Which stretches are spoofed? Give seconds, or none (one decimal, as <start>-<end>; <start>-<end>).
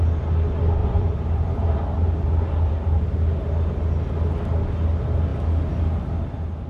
0.8-3.0